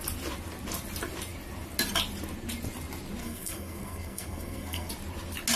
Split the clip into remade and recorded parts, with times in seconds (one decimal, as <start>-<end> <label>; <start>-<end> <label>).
0.0-3.2 recorded; 3.2-4.9 remade; 4.9-5.6 recorded